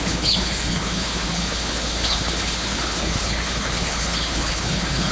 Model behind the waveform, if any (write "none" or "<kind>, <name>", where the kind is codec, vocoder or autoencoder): codec, HILCodec